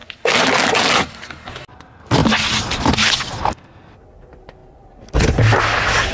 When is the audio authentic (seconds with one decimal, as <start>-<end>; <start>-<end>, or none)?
0.0-6.1